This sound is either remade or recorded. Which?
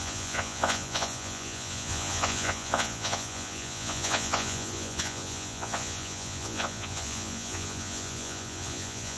remade